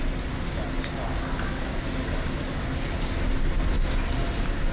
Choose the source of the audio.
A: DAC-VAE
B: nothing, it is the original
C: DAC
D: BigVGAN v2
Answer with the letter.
B